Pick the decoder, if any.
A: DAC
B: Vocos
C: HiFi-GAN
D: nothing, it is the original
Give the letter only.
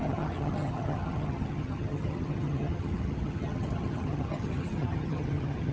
C